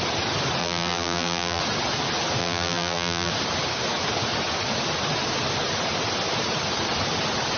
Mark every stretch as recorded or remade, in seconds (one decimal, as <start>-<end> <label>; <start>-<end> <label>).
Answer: 0.0-0.6 recorded; 0.6-1.6 remade; 1.6-2.4 recorded; 2.4-3.3 remade; 3.3-7.6 recorded